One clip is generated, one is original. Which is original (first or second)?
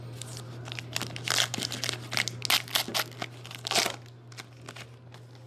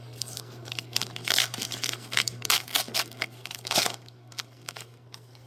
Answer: first